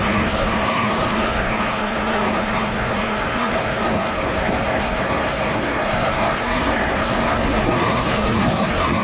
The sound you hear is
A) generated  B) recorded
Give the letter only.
A